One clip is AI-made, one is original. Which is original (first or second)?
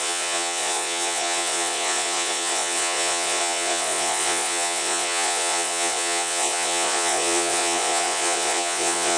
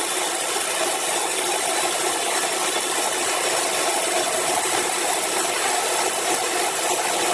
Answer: second